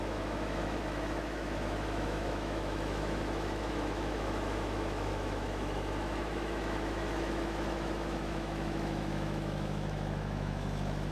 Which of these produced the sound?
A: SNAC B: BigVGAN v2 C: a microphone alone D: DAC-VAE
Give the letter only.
D